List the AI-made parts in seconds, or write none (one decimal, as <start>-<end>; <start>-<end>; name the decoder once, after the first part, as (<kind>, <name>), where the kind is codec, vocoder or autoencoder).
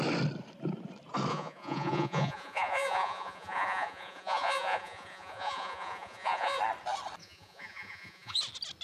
1.3-6.6 (vocoder, Vocos); 7.2-8.4